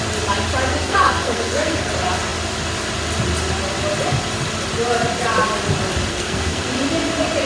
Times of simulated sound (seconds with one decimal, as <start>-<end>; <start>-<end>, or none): 0.7-1.9; 6.1-6.7